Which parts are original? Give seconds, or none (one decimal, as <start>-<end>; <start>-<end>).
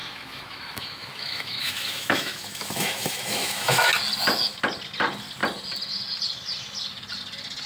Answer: 3.9-7.7